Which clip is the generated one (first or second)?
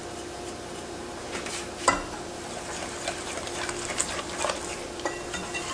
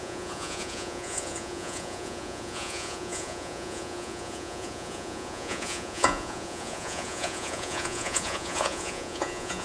second